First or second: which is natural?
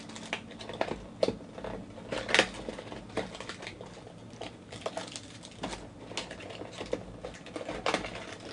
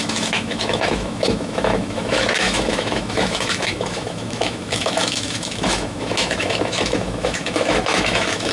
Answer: first